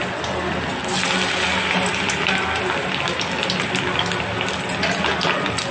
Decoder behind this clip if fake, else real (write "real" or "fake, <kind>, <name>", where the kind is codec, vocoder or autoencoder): real